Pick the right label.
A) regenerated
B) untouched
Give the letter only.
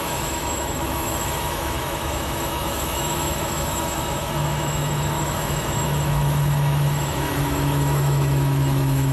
A